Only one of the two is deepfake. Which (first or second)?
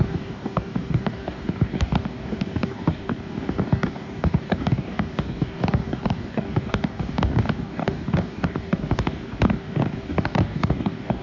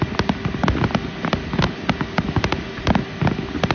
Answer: first